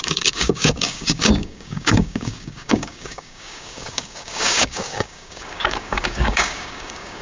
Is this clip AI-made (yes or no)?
yes